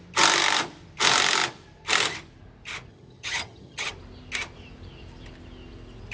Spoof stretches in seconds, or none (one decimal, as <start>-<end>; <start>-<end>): 2.9-3.9